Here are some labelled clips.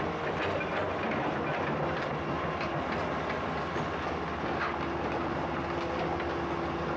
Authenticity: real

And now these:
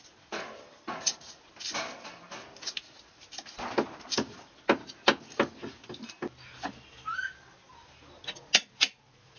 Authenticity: real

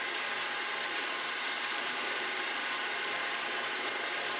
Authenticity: fake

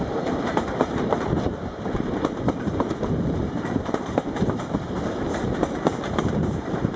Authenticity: fake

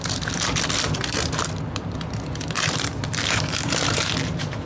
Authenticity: fake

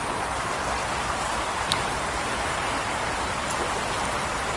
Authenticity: real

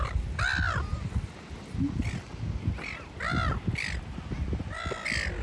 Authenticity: real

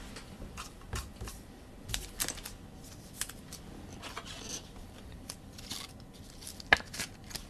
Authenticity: real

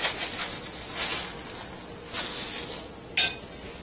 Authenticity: real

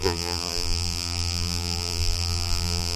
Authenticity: fake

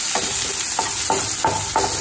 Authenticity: real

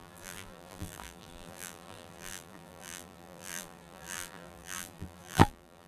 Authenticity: fake